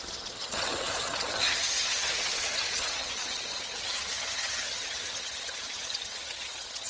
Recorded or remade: remade